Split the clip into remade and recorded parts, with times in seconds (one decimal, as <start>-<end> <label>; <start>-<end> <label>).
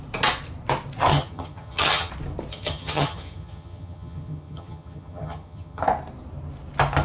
0.0-1.1 recorded; 1.1-2.1 remade; 2.1-2.5 recorded; 2.5-5.8 remade; 5.8-7.0 recorded